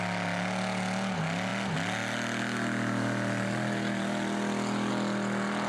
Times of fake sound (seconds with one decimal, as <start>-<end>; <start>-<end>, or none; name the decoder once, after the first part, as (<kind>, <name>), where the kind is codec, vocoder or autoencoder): none